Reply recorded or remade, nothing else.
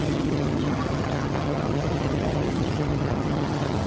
remade